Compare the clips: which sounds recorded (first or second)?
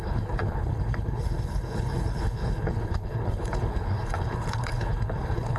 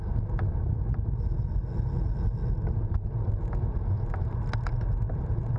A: second